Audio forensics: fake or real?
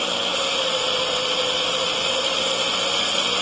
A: real